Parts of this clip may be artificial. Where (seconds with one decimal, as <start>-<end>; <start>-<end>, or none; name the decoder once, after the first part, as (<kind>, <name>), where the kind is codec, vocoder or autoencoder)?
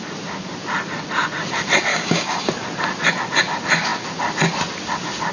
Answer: 1.9-2.5 (codec, DAC)